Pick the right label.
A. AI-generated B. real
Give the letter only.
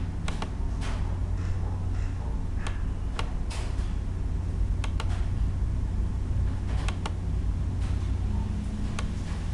B